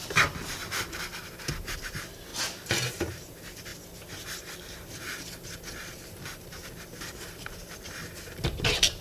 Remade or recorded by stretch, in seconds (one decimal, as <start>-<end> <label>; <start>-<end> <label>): 0.0-2.3 remade; 2.3-3.1 recorded; 3.1-9.0 remade